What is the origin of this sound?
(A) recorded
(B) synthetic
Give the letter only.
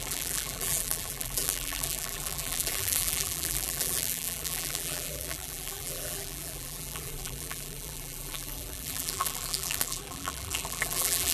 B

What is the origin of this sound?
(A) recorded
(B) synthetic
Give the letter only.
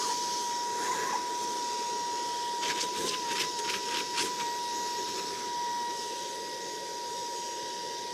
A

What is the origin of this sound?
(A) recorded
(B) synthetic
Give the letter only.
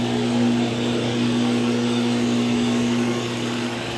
B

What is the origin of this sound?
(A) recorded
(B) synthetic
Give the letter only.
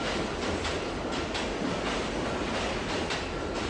A